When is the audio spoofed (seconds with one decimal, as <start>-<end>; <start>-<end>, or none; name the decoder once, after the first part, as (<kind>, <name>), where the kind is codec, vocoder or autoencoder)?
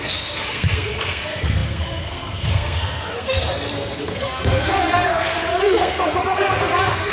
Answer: 0.0-7.1 (codec, SNAC)